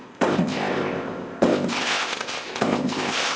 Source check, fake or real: fake